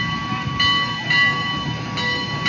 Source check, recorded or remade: recorded